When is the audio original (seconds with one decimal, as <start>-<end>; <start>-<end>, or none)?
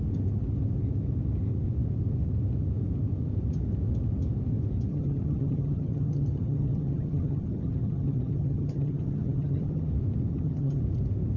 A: 0.0-4.9; 9.9-10.3; 10.8-11.4